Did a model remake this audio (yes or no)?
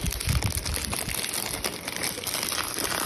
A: no